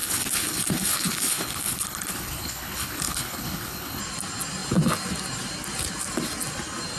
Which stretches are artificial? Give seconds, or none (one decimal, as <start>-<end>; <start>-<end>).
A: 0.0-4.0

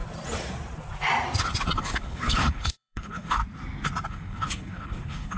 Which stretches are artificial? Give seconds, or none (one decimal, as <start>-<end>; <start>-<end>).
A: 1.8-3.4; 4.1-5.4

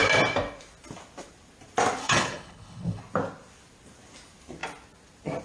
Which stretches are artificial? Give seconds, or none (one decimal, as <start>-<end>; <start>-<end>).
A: 2.0-3.0

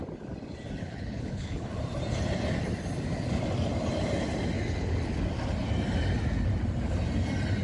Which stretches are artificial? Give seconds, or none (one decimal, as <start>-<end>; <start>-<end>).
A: 0.8-1.7

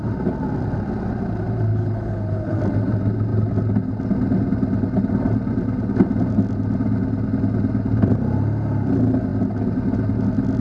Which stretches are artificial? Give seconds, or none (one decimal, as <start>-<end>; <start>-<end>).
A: 1.7-2.6